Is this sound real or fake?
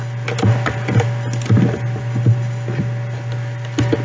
real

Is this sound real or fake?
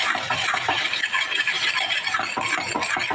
real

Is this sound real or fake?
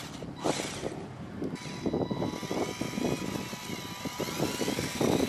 real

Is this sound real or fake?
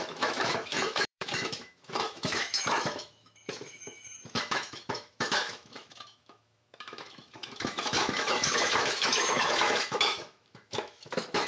fake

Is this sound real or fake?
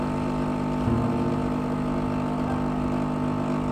real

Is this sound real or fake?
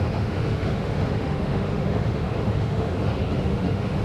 fake